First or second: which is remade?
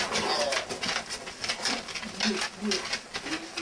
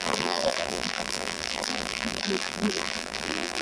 second